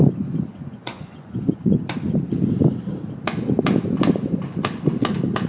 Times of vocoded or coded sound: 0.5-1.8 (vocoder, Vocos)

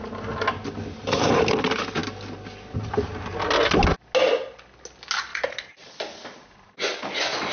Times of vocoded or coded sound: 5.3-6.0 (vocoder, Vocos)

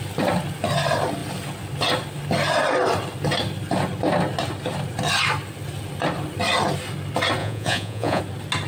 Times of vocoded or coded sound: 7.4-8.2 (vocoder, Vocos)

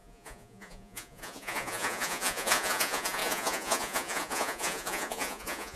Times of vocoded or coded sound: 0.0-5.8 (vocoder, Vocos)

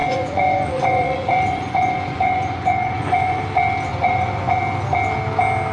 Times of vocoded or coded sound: 0.0-3.4 (vocoder, Vocos); 3.9-4.6